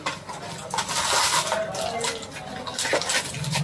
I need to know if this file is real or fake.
real